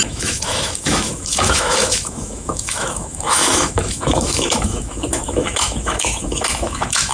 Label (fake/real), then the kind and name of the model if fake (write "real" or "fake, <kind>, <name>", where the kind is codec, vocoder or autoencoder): fake, autoencoder, DAC-VAE